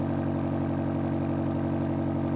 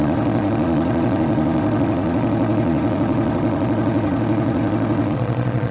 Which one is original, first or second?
first